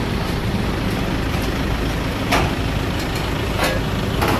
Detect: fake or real real